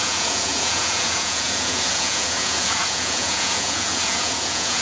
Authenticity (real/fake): fake